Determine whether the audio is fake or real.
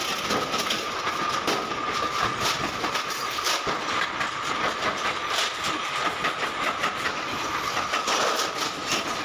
real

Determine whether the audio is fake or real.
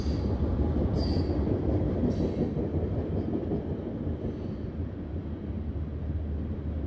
real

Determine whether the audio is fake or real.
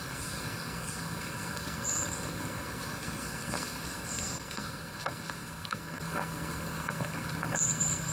fake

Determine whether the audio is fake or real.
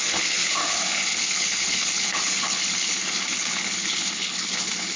fake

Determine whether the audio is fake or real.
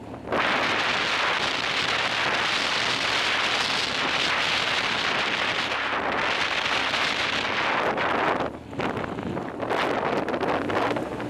real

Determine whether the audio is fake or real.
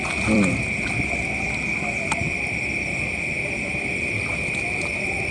fake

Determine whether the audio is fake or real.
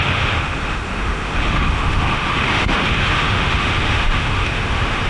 fake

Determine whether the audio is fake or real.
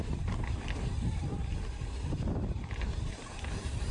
real